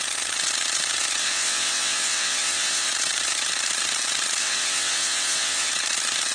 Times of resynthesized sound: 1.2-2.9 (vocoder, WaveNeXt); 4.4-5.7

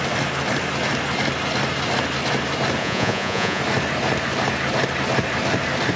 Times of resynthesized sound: 2.8-3.6 (vocoder, Vocos)

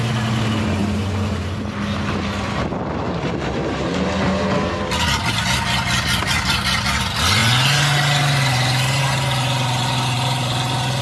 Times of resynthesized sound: none

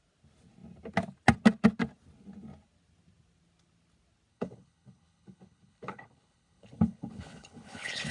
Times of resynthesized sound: 4.3-8.1 (codec, HILCodec)

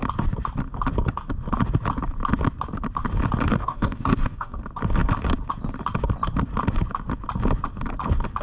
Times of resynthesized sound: 3.5-4.6 (codec, DAC)